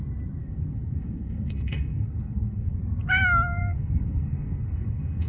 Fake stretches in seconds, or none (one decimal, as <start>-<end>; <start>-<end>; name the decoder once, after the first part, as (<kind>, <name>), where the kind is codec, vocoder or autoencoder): 0.4-2.8 (codec, SNAC); 3.6-5.3